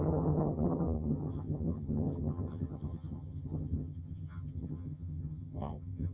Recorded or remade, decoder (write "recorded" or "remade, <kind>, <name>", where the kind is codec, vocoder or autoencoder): remade, vocoder, HiFi-GAN